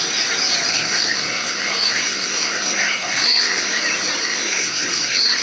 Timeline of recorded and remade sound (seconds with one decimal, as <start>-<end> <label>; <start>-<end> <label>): 0.0-0.7 recorded; 0.7-3.8 remade; 3.8-4.2 recorded; 4.2-5.4 remade